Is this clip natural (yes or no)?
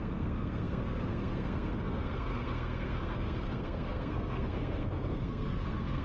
no